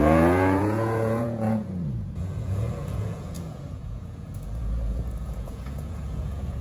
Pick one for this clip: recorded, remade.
remade